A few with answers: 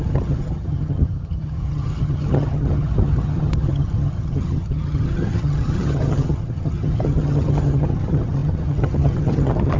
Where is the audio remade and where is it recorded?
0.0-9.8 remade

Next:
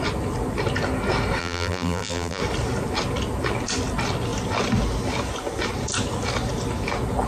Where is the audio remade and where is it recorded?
0.0-1.4 recorded; 1.4-2.4 remade; 2.4-7.3 recorded

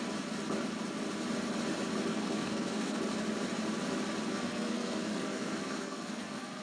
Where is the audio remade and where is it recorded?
0.0-2.1 recorded; 2.1-3.0 remade; 3.0-4.3 recorded; 4.3-6.6 remade

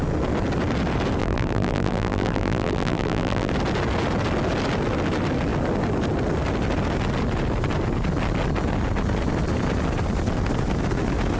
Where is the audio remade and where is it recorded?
0.0-1.2 recorded; 1.2-3.5 remade; 3.5-11.4 recorded

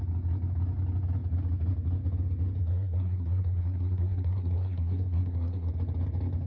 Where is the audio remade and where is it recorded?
0.0-2.6 recorded; 2.6-5.7 remade; 5.7-6.5 recorded

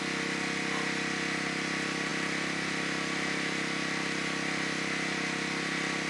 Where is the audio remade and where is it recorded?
0.0-6.1 recorded

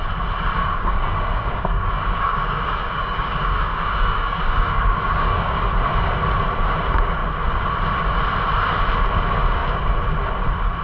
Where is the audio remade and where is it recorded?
0.0-0.6 recorded; 0.6-5.6 remade; 5.6-10.8 recorded

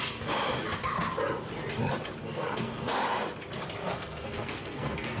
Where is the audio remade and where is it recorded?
0.0-2.2 recorded; 2.2-2.9 remade; 2.9-3.8 recorded; 3.8-5.2 remade